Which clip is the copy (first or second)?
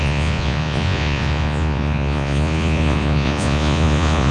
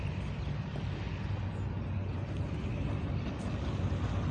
first